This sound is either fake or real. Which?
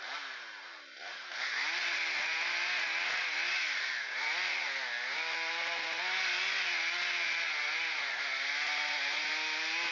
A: real